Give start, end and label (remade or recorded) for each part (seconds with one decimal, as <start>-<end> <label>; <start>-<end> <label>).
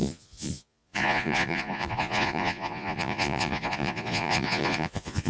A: 0.0-5.3 remade